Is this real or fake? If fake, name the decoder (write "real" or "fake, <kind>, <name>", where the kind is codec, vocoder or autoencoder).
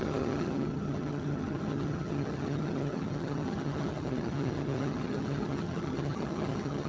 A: fake, vocoder, HiFi-GAN